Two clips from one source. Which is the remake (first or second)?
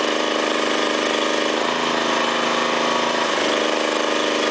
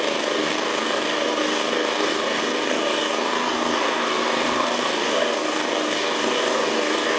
second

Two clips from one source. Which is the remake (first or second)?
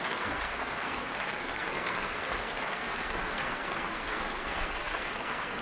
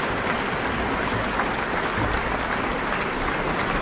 first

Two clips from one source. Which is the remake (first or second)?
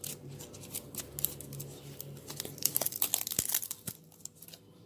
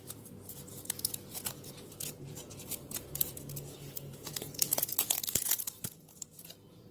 second